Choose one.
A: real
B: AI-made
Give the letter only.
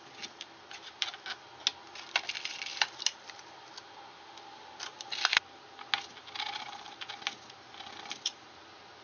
A